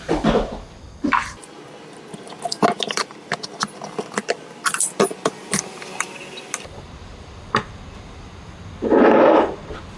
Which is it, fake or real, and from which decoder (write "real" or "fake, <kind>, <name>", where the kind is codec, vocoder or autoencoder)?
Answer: real